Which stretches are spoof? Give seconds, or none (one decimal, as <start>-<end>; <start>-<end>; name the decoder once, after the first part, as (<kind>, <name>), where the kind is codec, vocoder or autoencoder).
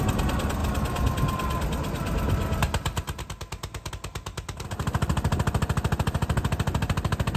none